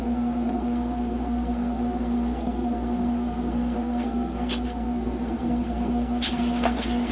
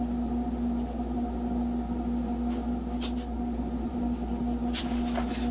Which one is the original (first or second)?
second